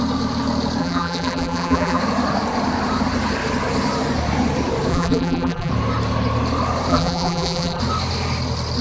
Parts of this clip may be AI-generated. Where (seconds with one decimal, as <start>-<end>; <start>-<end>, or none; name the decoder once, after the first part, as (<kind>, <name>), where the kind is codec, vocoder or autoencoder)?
0.8-2.0 (vocoder, BigVGAN v2); 4.9-5.7; 6.9-7.8

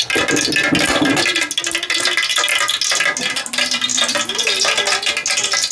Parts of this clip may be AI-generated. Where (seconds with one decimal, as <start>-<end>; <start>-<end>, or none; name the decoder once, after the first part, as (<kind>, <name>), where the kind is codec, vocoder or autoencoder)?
none